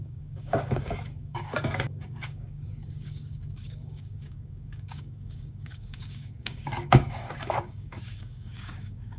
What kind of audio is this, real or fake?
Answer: fake